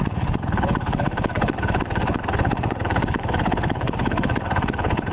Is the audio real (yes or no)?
no